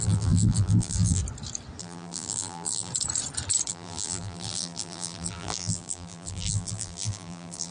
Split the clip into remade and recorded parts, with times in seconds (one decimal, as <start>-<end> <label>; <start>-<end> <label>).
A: 0.0-1.2 remade; 1.2-1.8 recorded; 1.8-2.9 remade; 2.9-3.7 recorded; 3.7-7.7 remade